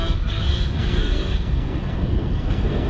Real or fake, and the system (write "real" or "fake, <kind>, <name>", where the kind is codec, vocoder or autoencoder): fake, codec, SNAC